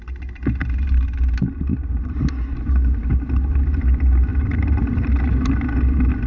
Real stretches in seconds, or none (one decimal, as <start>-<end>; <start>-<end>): 0.0-1.7; 2.3-4.3; 5.5-6.3